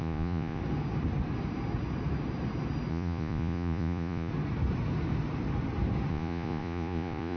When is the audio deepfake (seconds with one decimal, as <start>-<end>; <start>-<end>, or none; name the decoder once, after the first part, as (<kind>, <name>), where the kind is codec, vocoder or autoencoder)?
0.0-0.6 (vocoder, Vocos); 2.9-4.3; 6.1-7.4

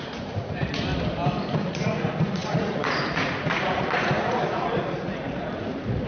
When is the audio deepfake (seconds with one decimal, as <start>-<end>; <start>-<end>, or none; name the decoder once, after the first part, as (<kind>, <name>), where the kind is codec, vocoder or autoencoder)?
0.0-0.9 (vocoder, Vocos); 1.5-6.1

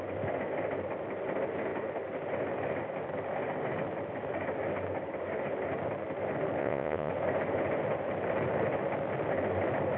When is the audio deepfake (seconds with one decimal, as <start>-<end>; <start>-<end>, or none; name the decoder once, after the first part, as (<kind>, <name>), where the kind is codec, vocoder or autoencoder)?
6.6-7.1 (vocoder, Vocos)

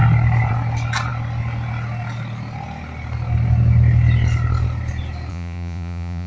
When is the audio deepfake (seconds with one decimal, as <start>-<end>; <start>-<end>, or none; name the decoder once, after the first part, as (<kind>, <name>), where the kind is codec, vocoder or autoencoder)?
5.3-6.3 (vocoder, Vocos)

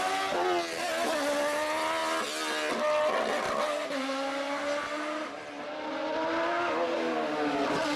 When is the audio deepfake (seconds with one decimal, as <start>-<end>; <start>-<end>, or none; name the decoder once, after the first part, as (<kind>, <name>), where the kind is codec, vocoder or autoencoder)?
none

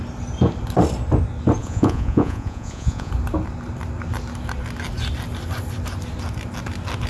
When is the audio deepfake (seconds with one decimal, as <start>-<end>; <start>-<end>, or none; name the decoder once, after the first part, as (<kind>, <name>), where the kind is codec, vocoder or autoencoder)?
1.6-3.1 (vocoder, Vocos)

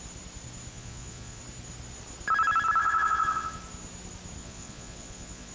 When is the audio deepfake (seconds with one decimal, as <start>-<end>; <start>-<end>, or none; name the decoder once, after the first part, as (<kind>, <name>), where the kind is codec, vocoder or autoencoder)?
0.7-1.4 (vocoder, Vocos); 2.8-3.6; 4.4-5.5